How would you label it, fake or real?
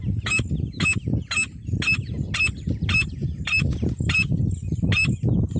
real